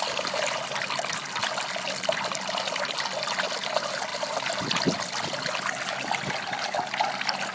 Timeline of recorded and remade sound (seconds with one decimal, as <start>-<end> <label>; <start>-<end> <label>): 0.0-7.5 recorded